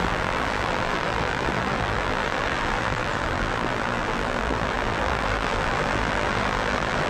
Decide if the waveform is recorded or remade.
remade